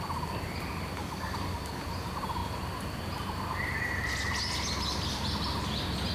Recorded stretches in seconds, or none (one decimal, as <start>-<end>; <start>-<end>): 0.0-1.0; 1.8-6.1